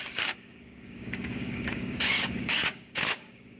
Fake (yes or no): yes